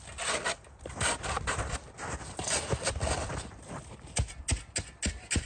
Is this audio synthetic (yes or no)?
no